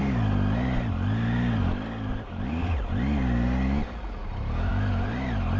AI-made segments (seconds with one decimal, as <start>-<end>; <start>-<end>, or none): none